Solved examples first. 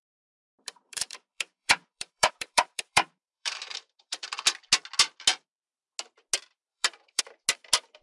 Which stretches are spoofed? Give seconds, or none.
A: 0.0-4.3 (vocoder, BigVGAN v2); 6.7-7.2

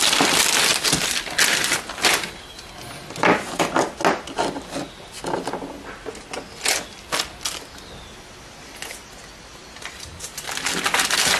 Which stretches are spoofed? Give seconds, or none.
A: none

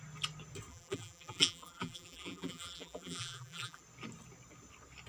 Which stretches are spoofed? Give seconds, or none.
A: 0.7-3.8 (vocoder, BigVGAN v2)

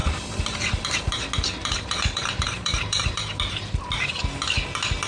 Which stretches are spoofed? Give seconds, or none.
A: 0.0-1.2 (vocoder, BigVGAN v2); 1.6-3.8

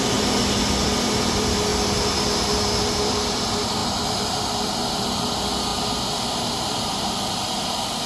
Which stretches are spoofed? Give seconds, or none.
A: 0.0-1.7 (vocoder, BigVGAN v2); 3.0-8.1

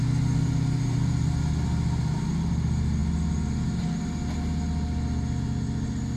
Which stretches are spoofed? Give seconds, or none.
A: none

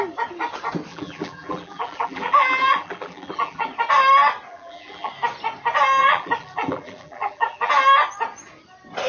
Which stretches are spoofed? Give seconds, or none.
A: 0.9-3.7 (vocoder, BigVGAN v2); 4.5-5.1; 6.0-7.7